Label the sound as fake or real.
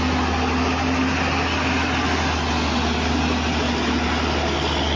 real